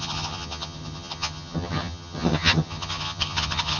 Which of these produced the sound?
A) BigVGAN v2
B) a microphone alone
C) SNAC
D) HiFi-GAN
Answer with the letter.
D